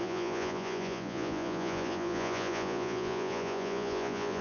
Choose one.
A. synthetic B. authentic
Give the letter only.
A